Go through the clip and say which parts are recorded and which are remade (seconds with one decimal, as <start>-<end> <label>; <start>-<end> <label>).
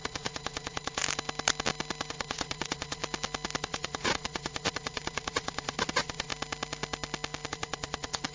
0.0-1.0 remade; 1.0-2.1 recorded; 2.1-3.0 remade; 3.0-3.6 recorded; 3.6-6.3 remade; 6.3-7.5 recorded; 7.5-8.3 remade